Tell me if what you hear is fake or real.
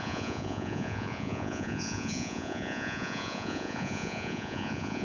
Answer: fake